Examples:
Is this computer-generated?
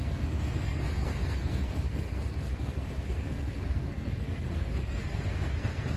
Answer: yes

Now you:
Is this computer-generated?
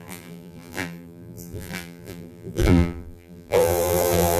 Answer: yes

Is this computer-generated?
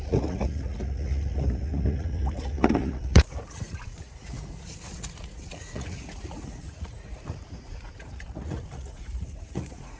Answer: yes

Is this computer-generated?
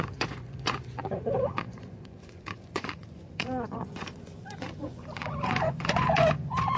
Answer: yes